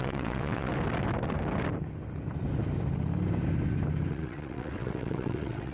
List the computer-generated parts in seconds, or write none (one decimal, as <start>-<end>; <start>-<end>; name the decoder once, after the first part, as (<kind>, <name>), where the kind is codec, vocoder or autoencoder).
0.0-0.7 (vocoder, WaveNeXt); 4.1-5.7